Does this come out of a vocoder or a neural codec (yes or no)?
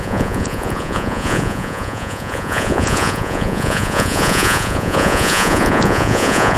yes